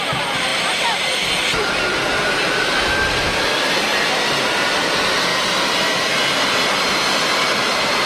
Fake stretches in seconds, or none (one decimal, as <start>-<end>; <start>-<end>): none